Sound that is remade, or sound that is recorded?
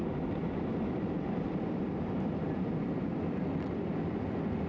recorded